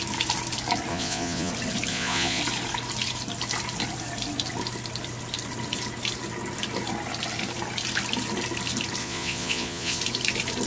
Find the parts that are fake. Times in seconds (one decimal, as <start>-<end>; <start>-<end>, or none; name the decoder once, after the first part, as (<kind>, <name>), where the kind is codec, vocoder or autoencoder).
0.9-1.5 (vocoder, Vocos); 1.9-2.4; 9.0-10.0